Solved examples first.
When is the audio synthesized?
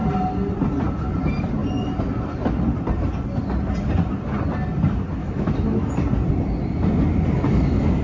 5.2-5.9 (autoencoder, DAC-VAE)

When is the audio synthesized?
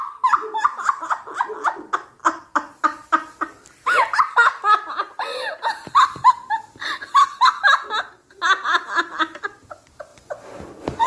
none